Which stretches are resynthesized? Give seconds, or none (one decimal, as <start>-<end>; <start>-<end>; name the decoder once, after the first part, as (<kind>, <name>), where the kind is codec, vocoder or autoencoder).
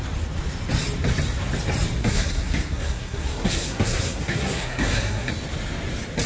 2.0-5.3 (codec, SNAC)